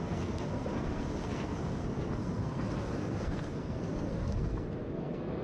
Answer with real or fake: fake